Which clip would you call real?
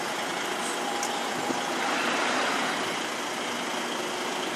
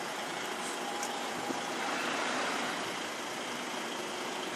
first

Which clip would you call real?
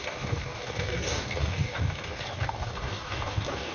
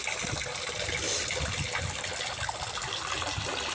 second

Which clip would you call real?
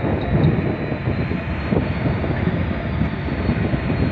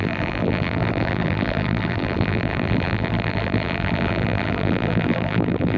first